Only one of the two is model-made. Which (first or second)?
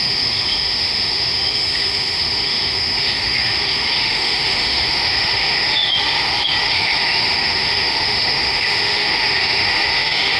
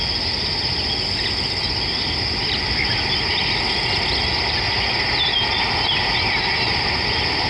first